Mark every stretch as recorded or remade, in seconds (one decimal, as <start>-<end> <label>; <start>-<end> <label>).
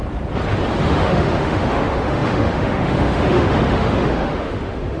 0.0-0.8 recorded; 0.8-5.0 remade